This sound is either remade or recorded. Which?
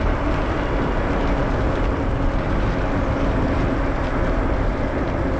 recorded